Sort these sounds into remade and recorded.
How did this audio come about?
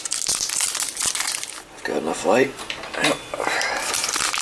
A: recorded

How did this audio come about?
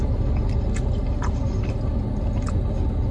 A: recorded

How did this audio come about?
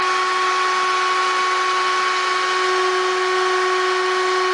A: recorded